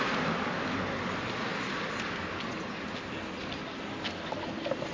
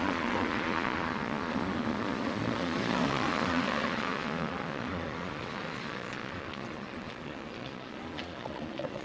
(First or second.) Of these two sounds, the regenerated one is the second